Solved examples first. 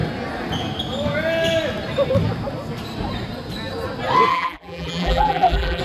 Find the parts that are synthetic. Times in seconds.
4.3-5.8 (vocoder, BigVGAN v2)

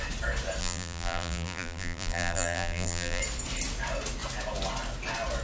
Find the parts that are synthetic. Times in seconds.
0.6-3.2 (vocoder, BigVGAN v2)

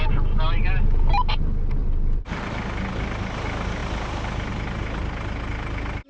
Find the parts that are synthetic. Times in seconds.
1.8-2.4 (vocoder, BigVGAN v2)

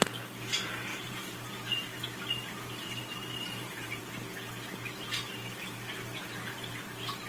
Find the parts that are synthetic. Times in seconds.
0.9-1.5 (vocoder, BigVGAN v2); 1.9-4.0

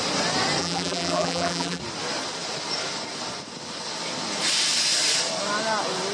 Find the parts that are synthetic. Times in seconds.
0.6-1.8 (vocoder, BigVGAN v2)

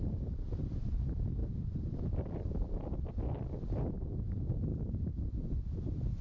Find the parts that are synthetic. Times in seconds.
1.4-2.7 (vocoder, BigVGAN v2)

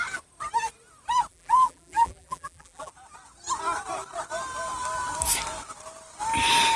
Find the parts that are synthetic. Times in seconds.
1.3-2.9 (vocoder, BigVGAN v2)

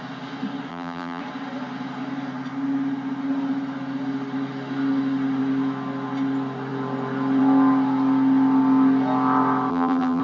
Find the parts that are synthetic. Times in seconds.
0.7-1.2 (vocoder, BigVGAN v2); 9.7-10.2